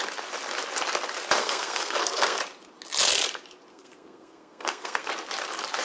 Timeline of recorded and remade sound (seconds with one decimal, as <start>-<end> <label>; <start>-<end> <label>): 0.0-1.4 recorded; 1.4-2.4 remade; 2.4-3.7 recorded; 3.7-5.1 remade; 5.1-5.8 recorded